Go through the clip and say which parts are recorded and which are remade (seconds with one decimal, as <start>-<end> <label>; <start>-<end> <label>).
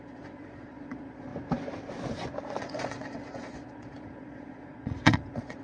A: 0.0-1.3 remade; 1.3-2.6 recorded; 2.6-5.6 remade